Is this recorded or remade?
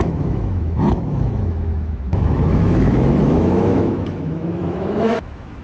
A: remade